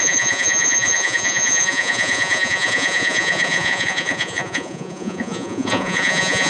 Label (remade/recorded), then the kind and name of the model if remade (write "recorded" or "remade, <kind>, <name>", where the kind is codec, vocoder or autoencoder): remade, vocoder, Vocos